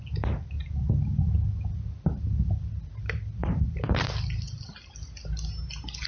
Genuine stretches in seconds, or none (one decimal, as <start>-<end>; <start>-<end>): 0.0-6.1